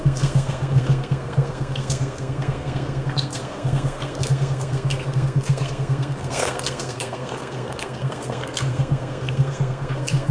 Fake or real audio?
fake